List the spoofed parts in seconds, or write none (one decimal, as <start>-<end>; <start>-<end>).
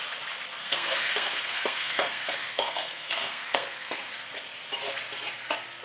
0.6-4.1